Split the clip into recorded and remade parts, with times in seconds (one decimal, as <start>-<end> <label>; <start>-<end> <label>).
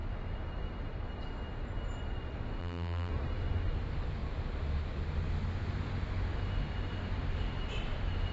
0.0-2.6 recorded; 2.6-3.1 remade; 3.1-8.3 recorded